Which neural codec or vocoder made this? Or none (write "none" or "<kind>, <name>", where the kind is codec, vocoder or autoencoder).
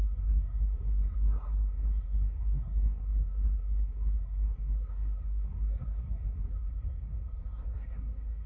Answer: codec, SNAC